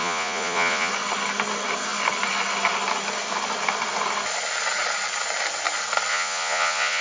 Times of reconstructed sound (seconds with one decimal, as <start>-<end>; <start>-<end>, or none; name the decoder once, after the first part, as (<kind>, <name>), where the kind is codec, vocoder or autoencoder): 0.0-0.9 (vocoder, Vocos); 6.1-7.0